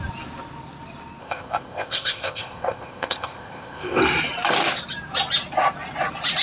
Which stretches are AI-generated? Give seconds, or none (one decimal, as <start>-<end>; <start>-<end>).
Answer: 1.2-4.0